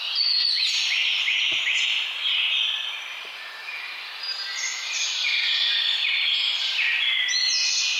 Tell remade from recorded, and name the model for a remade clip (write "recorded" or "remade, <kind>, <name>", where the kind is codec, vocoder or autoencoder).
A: recorded